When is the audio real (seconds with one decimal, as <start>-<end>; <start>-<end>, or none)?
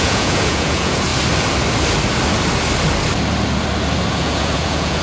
1.1-4.1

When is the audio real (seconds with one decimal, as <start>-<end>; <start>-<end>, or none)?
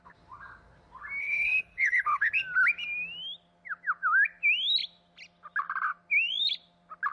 0.0-1.2; 2.3-7.1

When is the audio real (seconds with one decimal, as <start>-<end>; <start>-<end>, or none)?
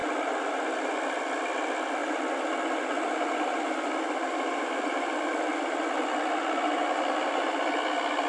0.0-2.0; 6.2-8.3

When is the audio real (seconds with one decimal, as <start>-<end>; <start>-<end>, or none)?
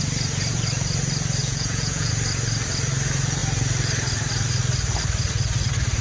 0.0-1.4; 2.1-6.0